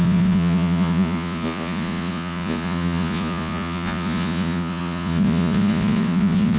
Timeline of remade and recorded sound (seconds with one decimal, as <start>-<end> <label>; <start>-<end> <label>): 0.0-6.6 remade